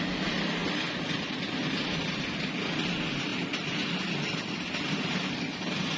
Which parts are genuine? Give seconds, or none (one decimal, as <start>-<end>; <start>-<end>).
0.0-0.6; 2.4-3.3; 5.4-6.0